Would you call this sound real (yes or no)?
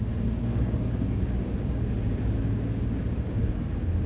no